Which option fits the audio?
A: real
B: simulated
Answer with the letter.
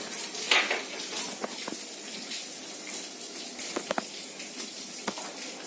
A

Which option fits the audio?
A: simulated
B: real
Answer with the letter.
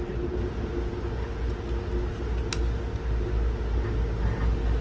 B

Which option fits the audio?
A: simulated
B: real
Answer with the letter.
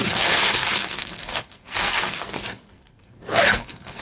A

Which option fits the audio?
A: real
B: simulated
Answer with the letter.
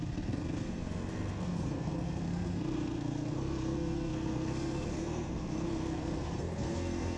B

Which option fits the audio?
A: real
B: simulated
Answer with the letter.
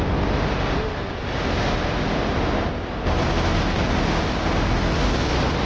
A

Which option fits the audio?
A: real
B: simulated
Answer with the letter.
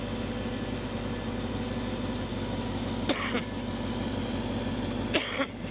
A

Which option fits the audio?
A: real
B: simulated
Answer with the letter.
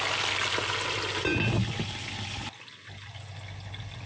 A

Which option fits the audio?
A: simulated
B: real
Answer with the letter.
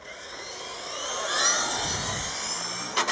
B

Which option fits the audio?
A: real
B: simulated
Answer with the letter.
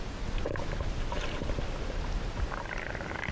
A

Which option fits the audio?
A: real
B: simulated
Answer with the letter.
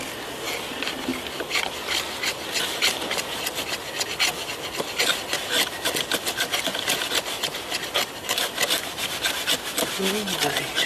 A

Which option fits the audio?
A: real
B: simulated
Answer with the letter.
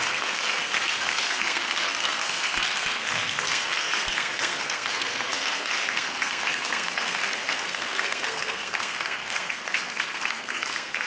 B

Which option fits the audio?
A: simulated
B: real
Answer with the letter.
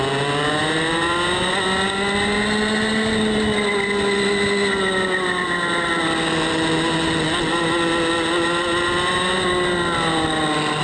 B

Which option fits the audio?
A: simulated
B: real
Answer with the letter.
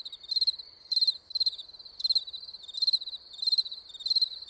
B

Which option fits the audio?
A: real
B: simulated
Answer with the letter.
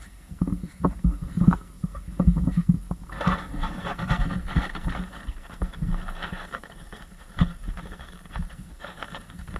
B